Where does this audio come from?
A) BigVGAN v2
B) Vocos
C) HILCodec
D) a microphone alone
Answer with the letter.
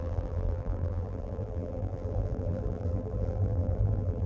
A